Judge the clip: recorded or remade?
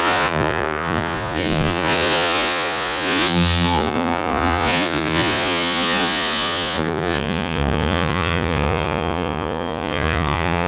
remade